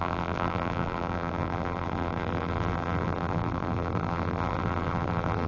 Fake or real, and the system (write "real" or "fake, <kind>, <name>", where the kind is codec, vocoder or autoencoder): fake, vocoder, BigVGAN v2